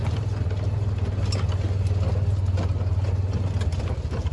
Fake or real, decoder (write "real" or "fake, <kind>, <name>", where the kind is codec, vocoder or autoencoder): real